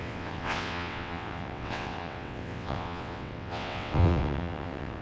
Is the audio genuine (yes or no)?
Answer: no